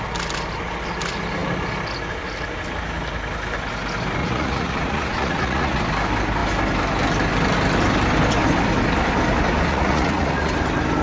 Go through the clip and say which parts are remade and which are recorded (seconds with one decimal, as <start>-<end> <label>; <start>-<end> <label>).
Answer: 0.0-4.2 recorded; 4.2-5.8 remade; 5.8-9.7 recorded; 9.7-10.5 remade; 10.5-11.0 recorded